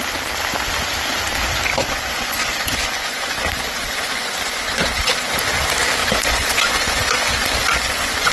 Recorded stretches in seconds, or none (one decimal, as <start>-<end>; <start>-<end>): 0.0-1.8; 5.3-6.0